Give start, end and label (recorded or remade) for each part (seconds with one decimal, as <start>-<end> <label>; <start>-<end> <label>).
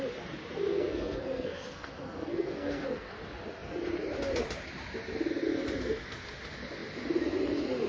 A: 0.0-0.7 recorded; 0.7-3.1 remade; 3.1-7.9 recorded